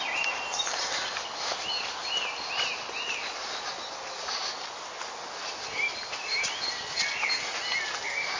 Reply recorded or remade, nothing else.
recorded